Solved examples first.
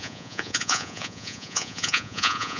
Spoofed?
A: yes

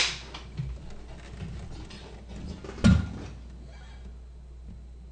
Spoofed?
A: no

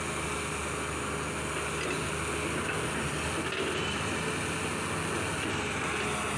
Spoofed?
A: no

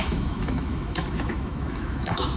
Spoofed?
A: yes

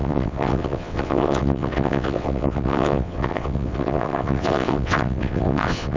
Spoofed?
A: yes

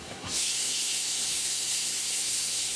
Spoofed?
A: yes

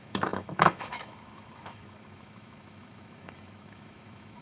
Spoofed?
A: yes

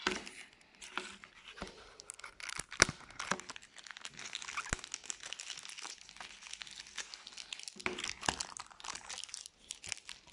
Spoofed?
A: no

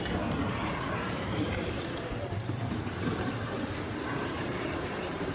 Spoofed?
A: yes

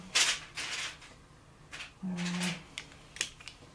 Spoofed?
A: no